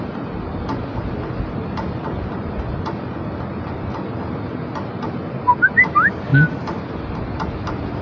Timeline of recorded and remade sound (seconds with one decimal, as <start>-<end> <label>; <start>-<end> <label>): 0.0-8.0 recorded